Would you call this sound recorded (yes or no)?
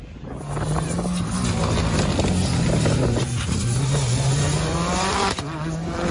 yes